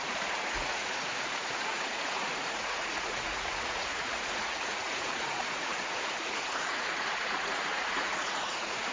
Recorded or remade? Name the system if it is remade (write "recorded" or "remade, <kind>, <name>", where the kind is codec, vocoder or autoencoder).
remade, vocoder, Vocos